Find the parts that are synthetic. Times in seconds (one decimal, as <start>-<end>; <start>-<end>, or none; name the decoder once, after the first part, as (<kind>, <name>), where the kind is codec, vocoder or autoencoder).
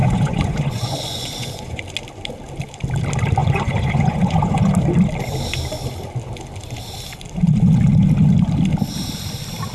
0.0-1.8 (vocoder, Vocos); 3.4-4.7